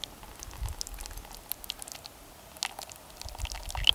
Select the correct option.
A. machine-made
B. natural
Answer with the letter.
B